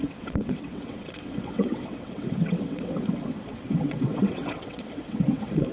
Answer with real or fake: fake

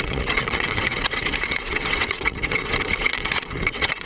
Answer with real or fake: fake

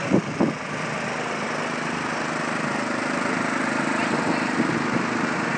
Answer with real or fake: real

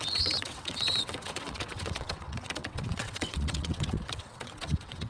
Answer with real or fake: fake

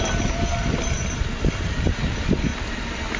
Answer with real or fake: real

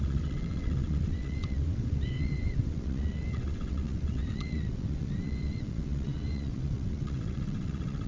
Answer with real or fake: fake